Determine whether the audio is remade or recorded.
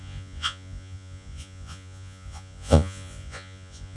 remade